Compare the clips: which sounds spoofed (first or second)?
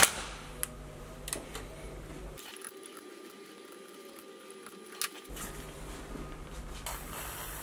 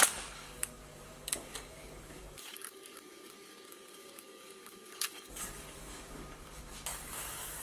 second